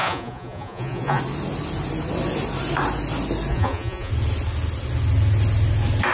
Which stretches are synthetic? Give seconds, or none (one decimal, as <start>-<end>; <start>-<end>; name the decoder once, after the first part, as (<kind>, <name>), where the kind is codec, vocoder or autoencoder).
0.0-1.2 (vocoder, Vocos); 3.5-4.1